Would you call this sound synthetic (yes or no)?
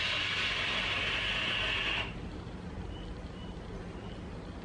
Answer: yes